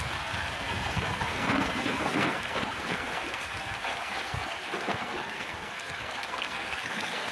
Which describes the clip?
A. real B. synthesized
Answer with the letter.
B